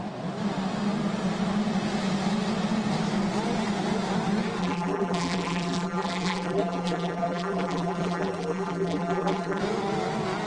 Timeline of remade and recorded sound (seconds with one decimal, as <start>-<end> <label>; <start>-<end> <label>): 0.0-4.6 recorded; 4.6-9.6 remade; 9.6-10.5 recorded